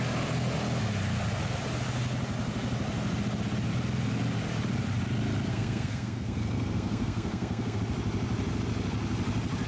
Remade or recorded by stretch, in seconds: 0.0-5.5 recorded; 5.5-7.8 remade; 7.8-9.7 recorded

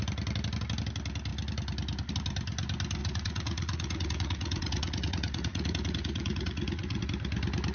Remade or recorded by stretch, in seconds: 0.0-3.0 recorded; 3.0-7.0 remade; 7.0-7.7 recorded

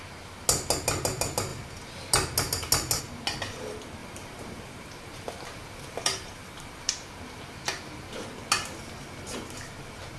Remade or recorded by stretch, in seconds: 0.0-4.0 recorded; 4.0-6.9 remade; 6.9-10.2 recorded

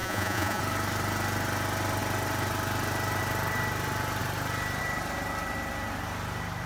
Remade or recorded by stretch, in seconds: 0.0-0.6 remade; 0.6-6.7 recorded

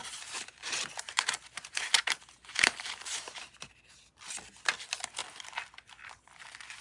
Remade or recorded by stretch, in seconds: 0.0-3.7 remade; 3.7-6.8 recorded